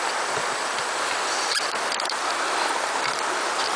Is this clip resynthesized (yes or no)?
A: no